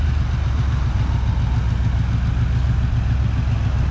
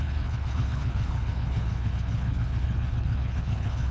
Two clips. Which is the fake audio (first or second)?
second